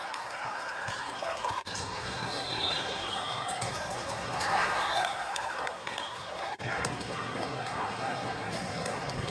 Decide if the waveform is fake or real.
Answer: fake